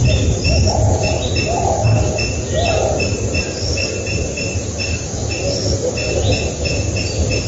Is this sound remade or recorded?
recorded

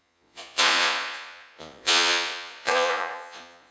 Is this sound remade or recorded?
remade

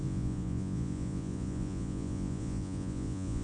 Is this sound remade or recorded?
remade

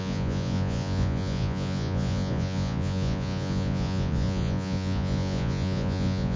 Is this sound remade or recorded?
remade